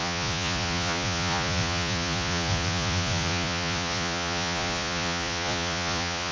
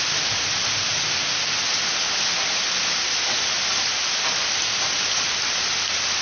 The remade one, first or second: first